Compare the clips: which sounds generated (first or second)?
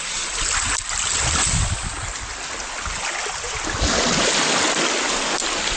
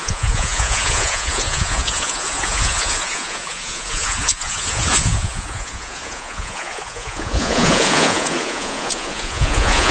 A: second